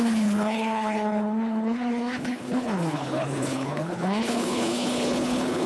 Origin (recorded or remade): remade